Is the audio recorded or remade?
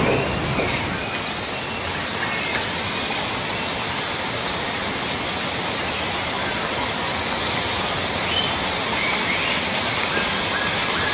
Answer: recorded